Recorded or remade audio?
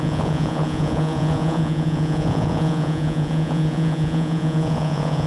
remade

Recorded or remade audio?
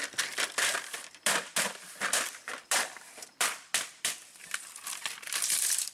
remade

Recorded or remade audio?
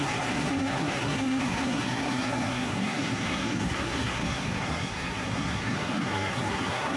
remade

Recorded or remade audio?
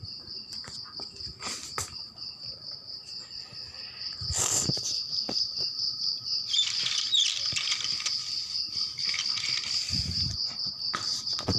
recorded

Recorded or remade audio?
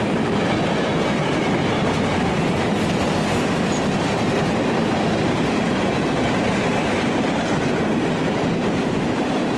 remade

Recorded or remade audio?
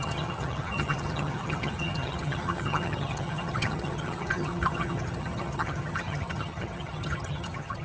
remade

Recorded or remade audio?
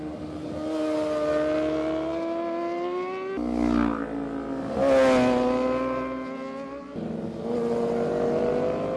recorded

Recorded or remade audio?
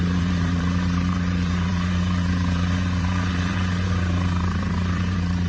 remade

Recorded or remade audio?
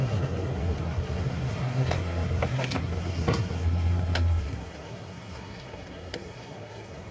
remade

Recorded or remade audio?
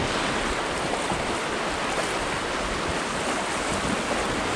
recorded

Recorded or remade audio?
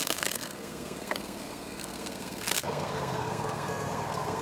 remade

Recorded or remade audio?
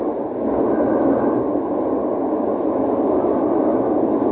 recorded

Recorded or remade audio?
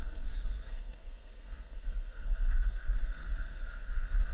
remade